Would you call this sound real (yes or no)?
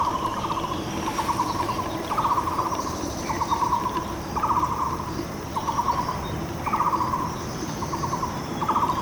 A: no